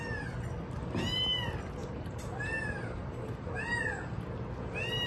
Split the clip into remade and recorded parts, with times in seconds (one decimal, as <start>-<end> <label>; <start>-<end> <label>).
0.0-1.8 recorded; 1.8-4.2 remade; 4.2-5.1 recorded